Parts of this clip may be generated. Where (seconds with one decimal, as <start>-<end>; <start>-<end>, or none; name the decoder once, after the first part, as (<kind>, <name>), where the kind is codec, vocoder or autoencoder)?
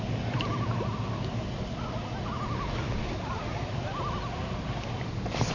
none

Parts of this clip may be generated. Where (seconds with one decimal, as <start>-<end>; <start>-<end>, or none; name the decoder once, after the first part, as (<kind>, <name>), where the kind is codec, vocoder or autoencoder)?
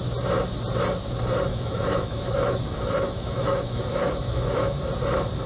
1.5-4.8 (autoencoder, DAC-VAE)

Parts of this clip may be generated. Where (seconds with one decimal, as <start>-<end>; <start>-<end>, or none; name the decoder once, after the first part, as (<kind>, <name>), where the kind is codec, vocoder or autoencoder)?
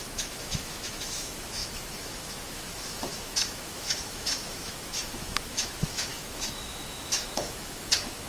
0.0-8.3 (autoencoder, DAC-VAE)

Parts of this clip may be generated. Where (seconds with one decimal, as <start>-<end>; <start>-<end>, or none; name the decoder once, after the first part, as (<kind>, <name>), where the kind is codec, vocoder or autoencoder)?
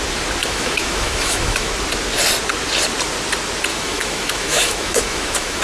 0.4-1.7 (autoencoder, DAC-VAE); 3.7-5.6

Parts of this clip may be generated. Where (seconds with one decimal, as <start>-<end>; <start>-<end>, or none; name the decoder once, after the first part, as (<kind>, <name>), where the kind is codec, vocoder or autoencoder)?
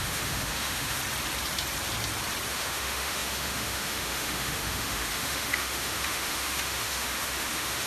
0.0-1.0 (autoencoder, DAC-VAE); 2.5-7.9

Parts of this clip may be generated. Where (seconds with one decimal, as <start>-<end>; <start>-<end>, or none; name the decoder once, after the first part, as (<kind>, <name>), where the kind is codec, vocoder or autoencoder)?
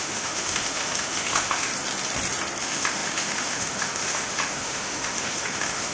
0.0-1.7 (autoencoder, DAC-VAE); 2.6-5.9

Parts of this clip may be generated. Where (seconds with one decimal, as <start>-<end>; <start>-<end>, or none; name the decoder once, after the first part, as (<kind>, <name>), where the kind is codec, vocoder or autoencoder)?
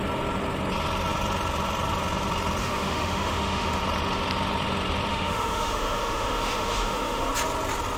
2.6-3.8 (autoencoder, DAC-VAE); 5.1-7.3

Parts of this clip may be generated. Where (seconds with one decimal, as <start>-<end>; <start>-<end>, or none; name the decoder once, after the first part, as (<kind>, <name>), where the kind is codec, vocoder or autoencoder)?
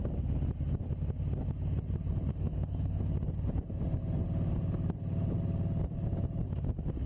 2.3-3.0 (autoencoder, DAC-VAE)